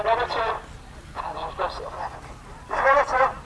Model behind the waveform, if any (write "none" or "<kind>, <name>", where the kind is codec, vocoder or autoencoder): none